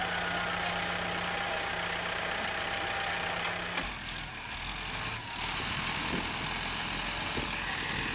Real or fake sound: real